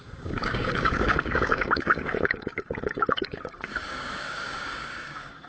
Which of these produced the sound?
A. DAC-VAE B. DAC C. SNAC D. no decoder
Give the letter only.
B